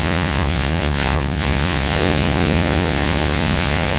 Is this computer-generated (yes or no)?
yes